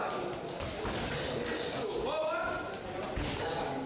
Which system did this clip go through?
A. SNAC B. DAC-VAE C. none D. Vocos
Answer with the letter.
C